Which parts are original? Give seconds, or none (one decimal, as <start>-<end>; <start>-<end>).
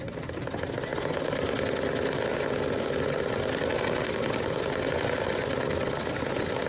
0.0-6.7